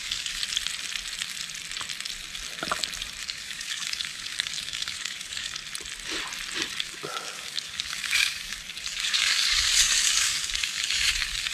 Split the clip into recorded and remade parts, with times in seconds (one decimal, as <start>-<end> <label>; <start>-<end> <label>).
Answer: 0.0-0.4 remade; 0.4-3.2 recorded; 3.2-5.6 remade; 5.6-6.7 recorded; 6.7-11.5 remade